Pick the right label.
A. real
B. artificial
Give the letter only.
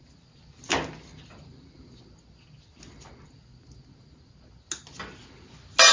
A